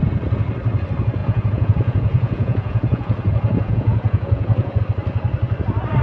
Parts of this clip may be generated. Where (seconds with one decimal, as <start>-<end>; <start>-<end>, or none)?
1.2-4.8